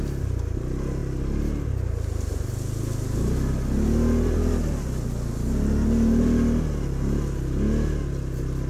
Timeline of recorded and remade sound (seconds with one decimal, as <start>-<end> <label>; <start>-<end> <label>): 0.0-8.7 recorded